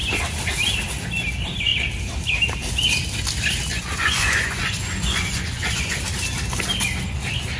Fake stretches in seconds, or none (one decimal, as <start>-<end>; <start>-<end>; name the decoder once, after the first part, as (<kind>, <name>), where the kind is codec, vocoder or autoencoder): 3.7-6.0 (vocoder, Vocos)